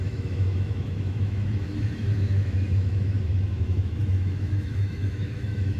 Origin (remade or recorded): remade